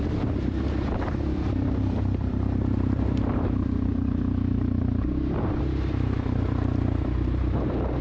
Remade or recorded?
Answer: remade